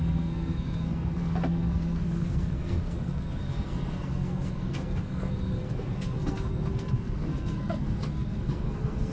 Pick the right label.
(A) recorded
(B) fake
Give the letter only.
B